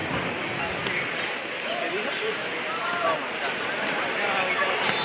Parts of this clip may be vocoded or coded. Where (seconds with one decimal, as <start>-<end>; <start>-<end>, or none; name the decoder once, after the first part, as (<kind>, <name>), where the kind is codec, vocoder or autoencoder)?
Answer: none